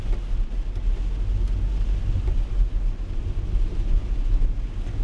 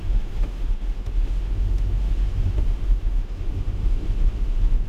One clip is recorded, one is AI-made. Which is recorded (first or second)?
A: first